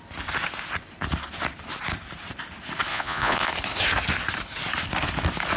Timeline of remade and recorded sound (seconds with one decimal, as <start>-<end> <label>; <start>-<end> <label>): 0.0-2.9 recorded; 2.9-3.5 remade; 3.5-5.6 recorded